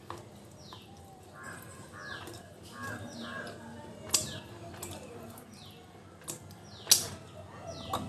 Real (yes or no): yes